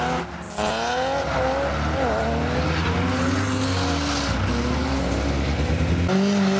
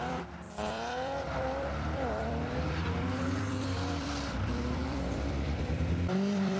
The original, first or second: first